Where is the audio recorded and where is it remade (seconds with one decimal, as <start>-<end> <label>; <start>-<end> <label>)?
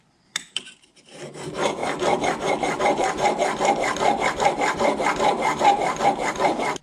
0.0-6.8 remade